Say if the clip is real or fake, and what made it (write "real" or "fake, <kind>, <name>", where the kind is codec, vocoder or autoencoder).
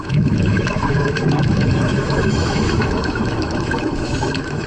fake, autoencoder, DAC-VAE